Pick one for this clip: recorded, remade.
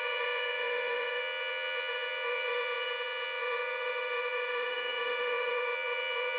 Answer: remade